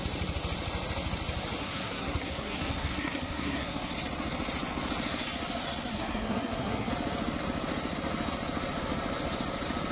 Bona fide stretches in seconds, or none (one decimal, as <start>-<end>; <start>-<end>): 0.0-1.6; 3.9-5.9; 6.9-9.9